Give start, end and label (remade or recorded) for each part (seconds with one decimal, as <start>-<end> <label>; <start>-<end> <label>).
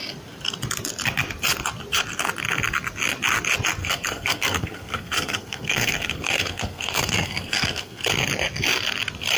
0.0-3.8 recorded; 3.8-8.0 remade; 8.0-9.4 recorded